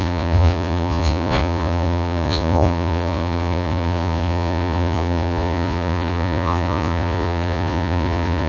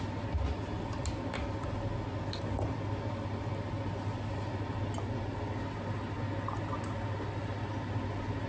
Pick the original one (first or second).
second